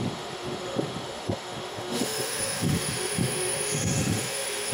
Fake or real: fake